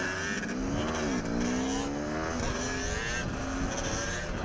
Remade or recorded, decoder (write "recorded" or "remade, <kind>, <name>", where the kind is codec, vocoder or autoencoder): recorded